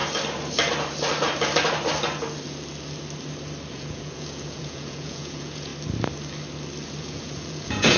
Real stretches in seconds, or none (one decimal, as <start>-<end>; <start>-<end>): 0.0-3.7; 5.7-7.0